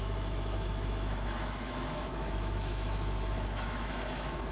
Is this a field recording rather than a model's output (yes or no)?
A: no